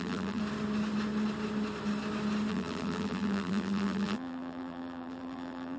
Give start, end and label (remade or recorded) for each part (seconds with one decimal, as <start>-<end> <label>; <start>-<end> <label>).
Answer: 0.0-0.4 remade; 0.4-2.5 recorded; 2.5-5.8 remade